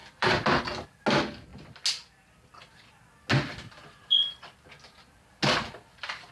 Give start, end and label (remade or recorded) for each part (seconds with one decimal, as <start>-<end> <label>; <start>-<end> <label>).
0.0-0.6 remade; 0.6-6.3 recorded